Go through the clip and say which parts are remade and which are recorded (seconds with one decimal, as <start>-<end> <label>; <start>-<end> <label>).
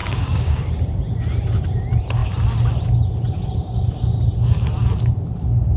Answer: 0.0-0.7 remade; 0.7-5.8 recorded